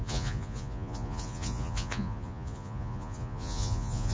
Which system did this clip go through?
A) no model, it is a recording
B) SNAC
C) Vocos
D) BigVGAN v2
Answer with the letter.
C